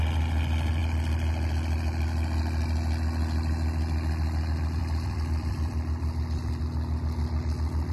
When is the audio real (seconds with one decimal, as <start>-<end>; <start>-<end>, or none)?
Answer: 0.0-4.8; 6.6-7.9